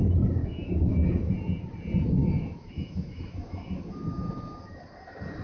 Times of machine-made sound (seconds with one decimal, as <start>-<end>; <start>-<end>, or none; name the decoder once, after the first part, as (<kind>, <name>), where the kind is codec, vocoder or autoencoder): 0.4-1.3 (autoencoder, DAC-VAE); 2.2-4.6